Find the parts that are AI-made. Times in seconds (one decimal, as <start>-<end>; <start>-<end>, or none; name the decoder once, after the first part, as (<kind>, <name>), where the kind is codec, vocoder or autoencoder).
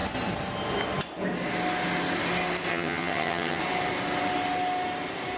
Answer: 2.7-3.6 (vocoder, HiFi-GAN)